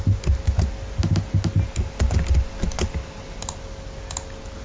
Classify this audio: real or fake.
real